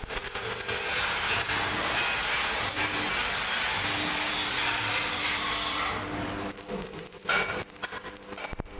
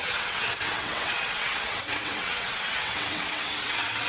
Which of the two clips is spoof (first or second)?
second